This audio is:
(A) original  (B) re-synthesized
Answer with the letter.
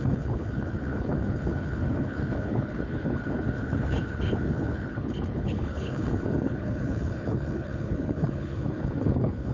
B